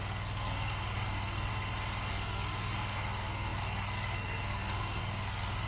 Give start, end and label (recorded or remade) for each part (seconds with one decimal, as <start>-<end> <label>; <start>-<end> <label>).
0.0-1.5 remade; 1.5-2.1 recorded; 2.1-5.7 remade